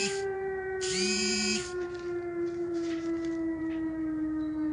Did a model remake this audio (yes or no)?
yes